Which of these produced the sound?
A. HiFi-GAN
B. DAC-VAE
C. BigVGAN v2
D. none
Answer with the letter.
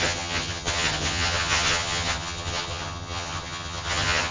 A